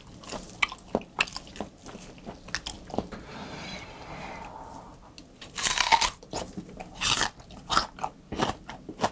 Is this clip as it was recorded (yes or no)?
yes